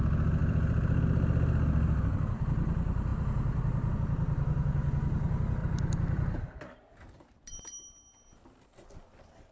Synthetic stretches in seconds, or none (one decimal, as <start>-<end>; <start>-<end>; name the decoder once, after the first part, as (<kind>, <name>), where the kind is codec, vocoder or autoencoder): 0.4-1.0 (vocoder, BigVGAN v2); 3.1-3.9; 5.6-6.8